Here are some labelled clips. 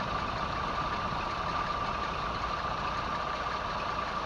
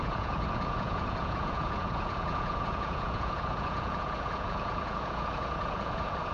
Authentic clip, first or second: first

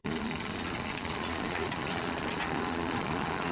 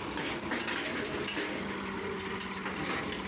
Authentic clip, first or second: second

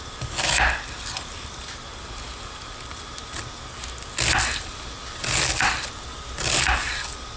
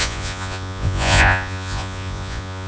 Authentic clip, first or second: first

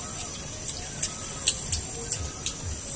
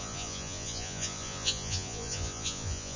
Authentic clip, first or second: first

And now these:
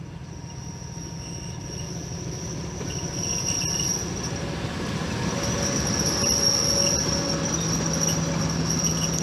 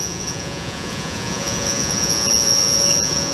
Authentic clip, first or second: first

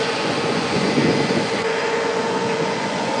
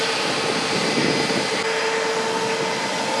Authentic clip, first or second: second